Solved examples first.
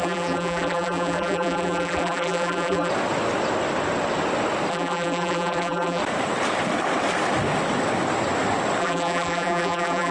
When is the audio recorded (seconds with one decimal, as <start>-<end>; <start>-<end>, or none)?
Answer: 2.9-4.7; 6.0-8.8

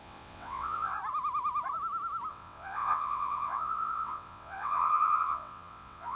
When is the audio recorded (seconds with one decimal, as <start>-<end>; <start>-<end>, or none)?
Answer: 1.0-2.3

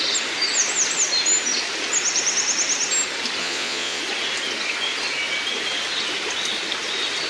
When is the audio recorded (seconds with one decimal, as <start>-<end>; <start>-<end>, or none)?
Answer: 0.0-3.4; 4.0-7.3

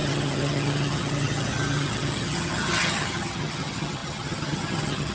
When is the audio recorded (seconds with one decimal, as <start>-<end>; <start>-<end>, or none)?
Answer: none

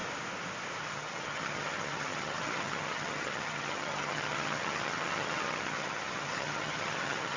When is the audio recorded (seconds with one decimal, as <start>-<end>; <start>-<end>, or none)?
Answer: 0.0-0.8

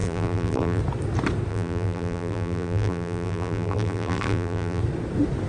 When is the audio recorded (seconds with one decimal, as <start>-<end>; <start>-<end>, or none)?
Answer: 0.8-1.5; 4.8-5.5